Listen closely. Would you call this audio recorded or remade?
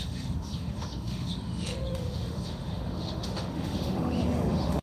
remade